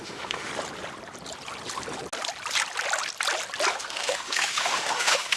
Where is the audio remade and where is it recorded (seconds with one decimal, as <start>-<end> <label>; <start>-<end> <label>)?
0.0-0.5 remade; 0.5-3.7 recorded; 3.7-5.4 remade